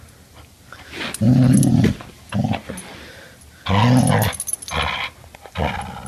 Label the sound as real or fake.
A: real